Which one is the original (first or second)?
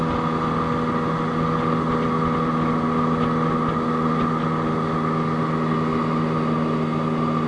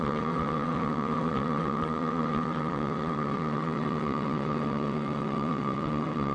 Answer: first